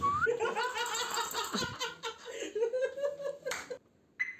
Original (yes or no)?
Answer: yes